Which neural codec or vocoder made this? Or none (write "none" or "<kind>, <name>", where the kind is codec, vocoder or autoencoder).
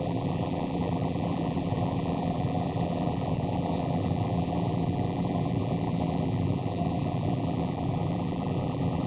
vocoder, BigVGAN v2